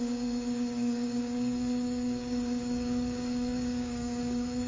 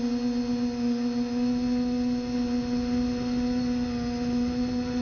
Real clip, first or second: second